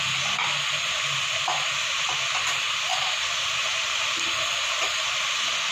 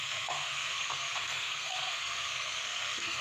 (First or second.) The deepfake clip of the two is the second